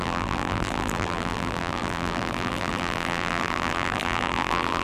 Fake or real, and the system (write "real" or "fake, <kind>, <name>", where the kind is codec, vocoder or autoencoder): fake, vocoder, BigVGAN v2